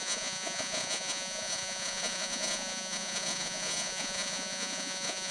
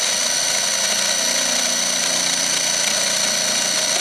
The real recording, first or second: second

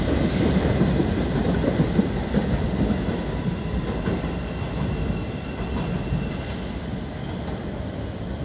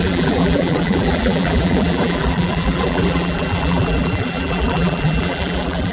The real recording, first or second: first